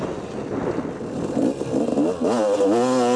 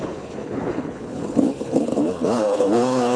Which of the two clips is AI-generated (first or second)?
second